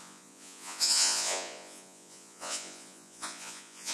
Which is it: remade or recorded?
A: remade